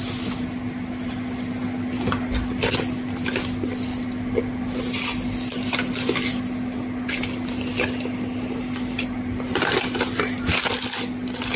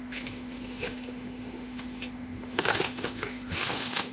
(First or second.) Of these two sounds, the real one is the first